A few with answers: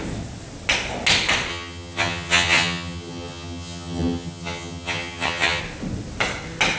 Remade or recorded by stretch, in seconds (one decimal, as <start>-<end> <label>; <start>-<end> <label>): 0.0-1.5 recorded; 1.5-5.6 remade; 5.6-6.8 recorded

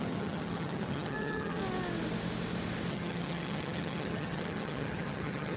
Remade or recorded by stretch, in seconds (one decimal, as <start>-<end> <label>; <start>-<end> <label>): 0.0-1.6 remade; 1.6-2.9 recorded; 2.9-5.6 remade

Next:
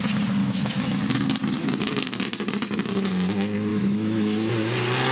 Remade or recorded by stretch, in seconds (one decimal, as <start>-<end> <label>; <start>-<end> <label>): 0.0-0.4 recorded; 0.4-1.0 remade; 1.0-3.7 recorded; 3.7-4.5 remade; 4.5-5.1 recorded